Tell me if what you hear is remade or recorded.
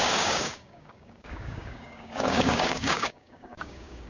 remade